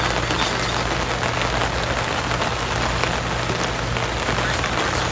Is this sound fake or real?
real